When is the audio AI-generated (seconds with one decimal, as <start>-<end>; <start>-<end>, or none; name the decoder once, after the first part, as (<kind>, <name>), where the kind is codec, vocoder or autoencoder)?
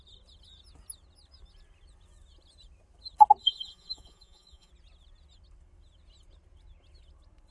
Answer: 3.4-4.7 (vocoder, Vocos)